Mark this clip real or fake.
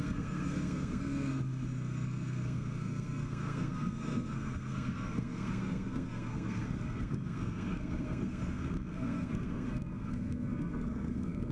fake